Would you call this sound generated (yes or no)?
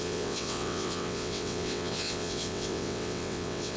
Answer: yes